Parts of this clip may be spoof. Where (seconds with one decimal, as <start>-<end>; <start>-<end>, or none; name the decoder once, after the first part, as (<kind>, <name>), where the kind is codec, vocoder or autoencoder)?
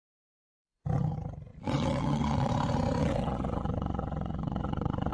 1.5-2.5 (vocoder, Vocos); 3.0-5.1